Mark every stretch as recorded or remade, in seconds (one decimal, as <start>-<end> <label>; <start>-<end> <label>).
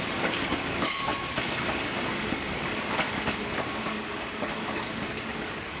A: 0.0-5.8 remade